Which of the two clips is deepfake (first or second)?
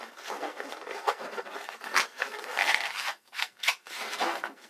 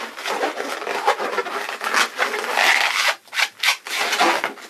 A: first